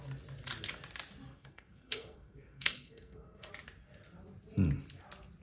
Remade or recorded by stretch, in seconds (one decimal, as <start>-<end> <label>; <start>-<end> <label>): 0.0-1.3 recorded; 1.3-3.5 remade; 3.5-5.4 recorded